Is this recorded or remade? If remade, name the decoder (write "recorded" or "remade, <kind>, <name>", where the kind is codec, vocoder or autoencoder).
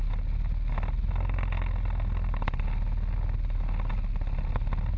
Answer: recorded